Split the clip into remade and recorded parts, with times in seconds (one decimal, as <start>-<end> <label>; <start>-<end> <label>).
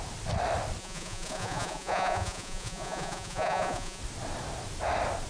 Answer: 0.0-0.8 recorded; 0.8-4.0 remade; 4.0-5.3 recorded